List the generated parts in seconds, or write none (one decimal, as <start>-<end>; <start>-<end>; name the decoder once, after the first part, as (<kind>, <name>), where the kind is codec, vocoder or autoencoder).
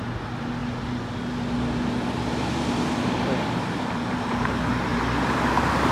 0.0-0.6 (vocoder, BigVGAN v2); 4.1-4.9; 5.5-5.9